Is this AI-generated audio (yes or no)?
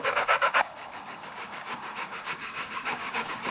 yes